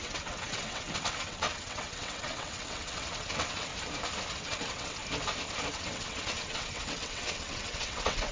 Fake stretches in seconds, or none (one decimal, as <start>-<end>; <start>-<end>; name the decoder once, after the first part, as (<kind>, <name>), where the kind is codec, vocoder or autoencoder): 0.0-3.7 (vocoder, WaveNeXt); 4.3-5.0; 5.7-8.3

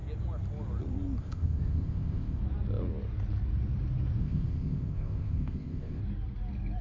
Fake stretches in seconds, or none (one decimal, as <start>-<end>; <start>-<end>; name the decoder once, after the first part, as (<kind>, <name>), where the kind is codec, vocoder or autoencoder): 1.2-2.4 (codec, ZipCodec); 4.2-6.0

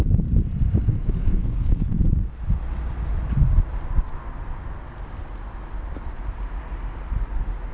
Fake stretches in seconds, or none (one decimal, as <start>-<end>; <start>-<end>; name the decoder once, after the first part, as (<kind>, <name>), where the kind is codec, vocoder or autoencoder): 0.9-1.8 (codec, SNAC)

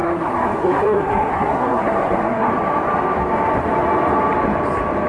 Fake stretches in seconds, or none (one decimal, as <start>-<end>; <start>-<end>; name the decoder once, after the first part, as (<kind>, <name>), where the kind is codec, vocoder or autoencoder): 0.0-2.5 (codec, SNAC)

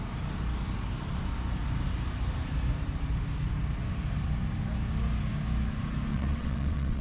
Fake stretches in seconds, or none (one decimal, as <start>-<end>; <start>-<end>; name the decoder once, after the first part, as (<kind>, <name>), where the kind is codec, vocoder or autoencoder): 6.1-7.0 (vocoder, WaveNeXt)